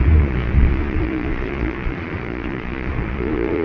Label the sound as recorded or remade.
remade